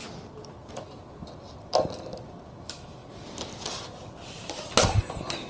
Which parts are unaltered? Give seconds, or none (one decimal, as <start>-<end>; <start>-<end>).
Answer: 0.0-5.5